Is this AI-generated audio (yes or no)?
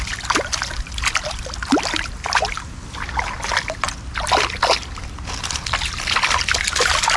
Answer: no